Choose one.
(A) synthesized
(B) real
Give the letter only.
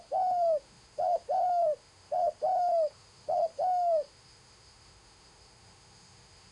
A